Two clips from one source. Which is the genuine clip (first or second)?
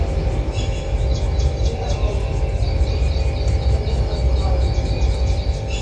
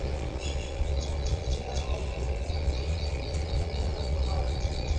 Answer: first